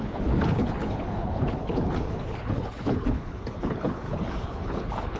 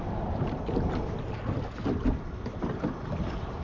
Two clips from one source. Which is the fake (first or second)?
first